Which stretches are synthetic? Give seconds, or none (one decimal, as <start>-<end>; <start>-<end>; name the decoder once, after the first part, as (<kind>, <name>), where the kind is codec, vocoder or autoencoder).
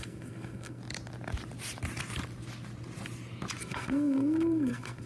0.0-0.8 (codec, SNAC); 3.6-5.1